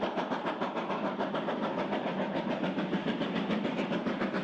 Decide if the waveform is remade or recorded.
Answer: recorded